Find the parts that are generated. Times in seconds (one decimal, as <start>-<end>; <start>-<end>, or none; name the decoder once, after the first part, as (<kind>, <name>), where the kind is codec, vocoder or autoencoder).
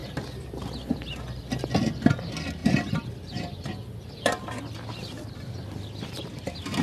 2.6-4.6 (vocoder, BigVGAN v2)